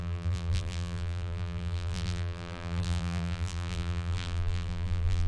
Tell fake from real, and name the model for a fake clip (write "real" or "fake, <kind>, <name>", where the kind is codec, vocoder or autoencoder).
fake, vocoder, BigVGAN v2